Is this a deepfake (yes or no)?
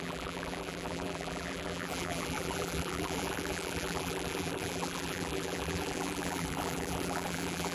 yes